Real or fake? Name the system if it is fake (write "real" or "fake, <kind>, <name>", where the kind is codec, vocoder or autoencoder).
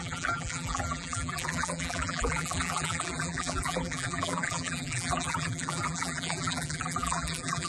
fake, vocoder, BigVGAN v2